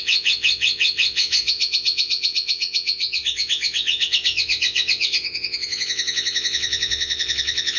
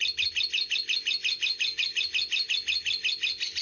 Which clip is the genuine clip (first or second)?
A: second